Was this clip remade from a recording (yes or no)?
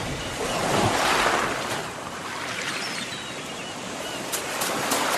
no